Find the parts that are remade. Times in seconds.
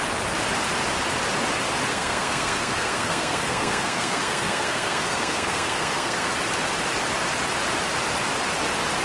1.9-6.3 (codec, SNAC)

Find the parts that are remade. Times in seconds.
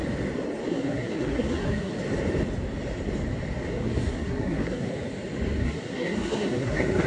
0.7-1.9 (codec, SNAC); 3.7-4.9; 5.6-7.1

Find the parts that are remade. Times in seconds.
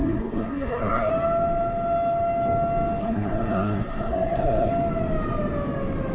0.0-1.1 (codec, SNAC); 3.0-4.7